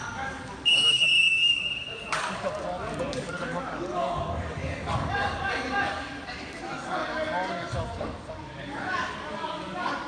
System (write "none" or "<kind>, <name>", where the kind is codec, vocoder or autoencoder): codec, DAC